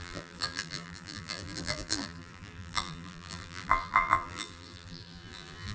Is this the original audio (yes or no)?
no